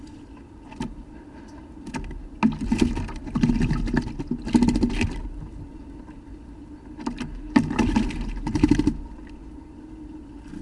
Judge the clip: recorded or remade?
recorded